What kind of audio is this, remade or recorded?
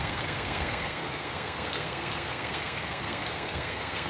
remade